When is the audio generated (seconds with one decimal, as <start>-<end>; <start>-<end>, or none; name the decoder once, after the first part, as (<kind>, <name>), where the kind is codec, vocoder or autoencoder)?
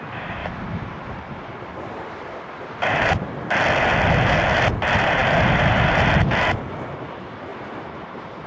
0.4-3.1 (vocoder, BigVGAN v2); 7.5-8.5